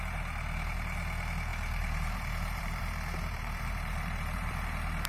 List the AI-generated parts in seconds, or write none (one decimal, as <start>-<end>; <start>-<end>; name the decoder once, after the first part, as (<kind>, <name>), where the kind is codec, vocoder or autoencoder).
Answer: 1.5-4.6 (vocoder, BigVGAN v2)